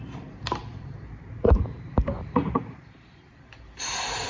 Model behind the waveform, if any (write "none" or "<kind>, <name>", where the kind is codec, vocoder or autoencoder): vocoder, BigVGAN v2